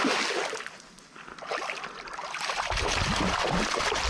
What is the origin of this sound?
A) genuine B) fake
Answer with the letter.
A